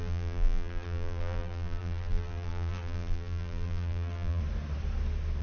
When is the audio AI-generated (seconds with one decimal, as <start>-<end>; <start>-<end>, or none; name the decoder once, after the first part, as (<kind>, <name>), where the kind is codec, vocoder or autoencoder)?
0.0-4.4 (vocoder, BigVGAN v2)